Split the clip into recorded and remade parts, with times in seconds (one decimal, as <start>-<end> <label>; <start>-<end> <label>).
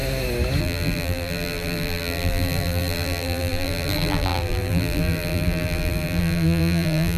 0.0-0.6 recorded; 0.6-7.2 remade